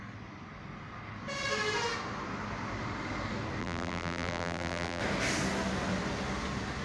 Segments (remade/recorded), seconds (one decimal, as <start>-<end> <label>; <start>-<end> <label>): 0.0-3.6 recorded; 3.6-5.0 remade; 5.0-6.8 recorded